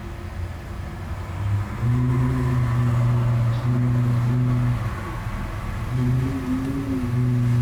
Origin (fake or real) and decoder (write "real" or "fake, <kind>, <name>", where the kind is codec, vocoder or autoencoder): real